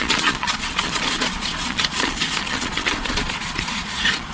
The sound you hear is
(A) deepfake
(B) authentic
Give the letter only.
A